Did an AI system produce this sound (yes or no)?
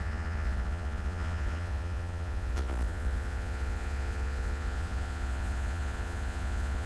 yes